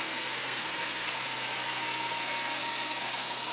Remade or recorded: remade